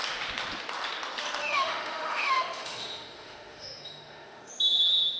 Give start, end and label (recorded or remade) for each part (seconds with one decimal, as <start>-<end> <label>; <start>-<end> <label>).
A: 0.0-1.4 recorded; 1.4-4.5 remade; 4.5-5.2 recorded

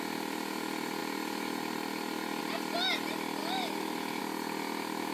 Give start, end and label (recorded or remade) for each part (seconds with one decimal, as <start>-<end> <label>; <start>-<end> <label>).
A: 0.0-3.4 recorded; 3.4-4.2 remade; 4.2-5.1 recorded

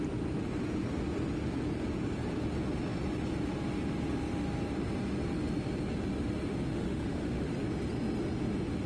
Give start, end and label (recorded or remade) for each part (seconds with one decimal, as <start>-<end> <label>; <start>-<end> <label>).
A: 0.0-6.7 recorded; 6.7-7.4 remade; 7.4-8.9 recorded

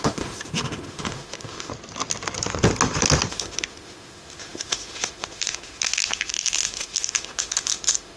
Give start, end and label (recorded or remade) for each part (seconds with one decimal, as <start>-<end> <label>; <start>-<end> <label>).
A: 0.0-1.7 remade; 1.7-3.3 recorded; 3.3-8.2 remade

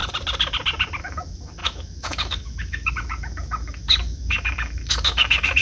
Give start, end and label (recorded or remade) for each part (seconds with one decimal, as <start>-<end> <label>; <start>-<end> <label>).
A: 0.0-1.0 recorded; 1.0-5.6 remade

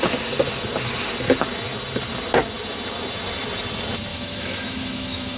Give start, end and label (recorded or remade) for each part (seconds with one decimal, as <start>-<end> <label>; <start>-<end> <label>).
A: 0.0-4.1 recorded; 4.1-5.4 remade

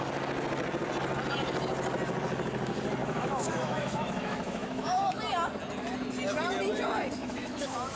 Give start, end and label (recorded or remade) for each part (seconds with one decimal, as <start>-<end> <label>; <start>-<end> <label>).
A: 0.0-3.0 recorded; 3.0-5.2 remade; 5.2-7.2 recorded; 7.2-8.0 remade